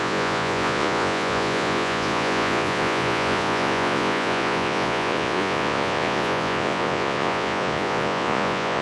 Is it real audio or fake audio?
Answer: fake